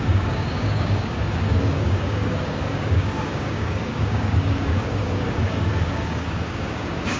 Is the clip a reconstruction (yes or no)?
yes